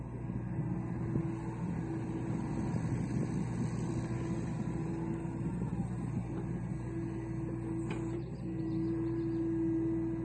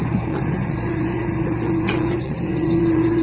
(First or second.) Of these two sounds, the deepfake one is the second